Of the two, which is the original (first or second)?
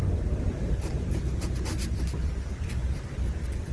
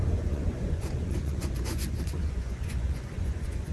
first